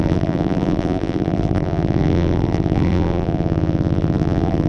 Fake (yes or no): yes